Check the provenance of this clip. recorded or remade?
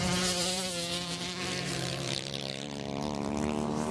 remade